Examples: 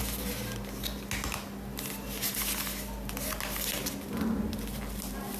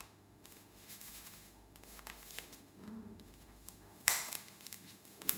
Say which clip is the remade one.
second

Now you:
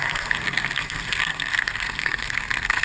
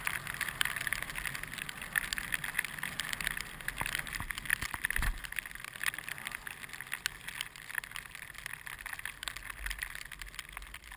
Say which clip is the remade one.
first